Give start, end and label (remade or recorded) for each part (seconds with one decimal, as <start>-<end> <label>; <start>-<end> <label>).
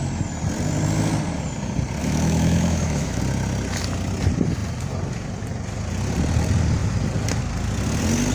0.0-2.0 recorded; 2.0-3.2 remade; 3.2-8.3 recorded